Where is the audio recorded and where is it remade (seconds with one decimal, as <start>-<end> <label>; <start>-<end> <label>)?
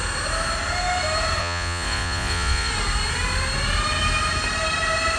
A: 0.0-1.4 recorded; 1.4-2.7 remade; 2.7-5.2 recorded